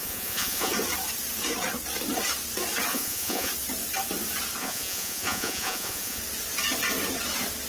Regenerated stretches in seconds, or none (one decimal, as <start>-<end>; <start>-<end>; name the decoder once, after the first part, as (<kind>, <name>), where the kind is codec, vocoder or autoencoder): 0.0-0.7 (vocoder, Vocos); 2.9-3.5; 4.6-6.2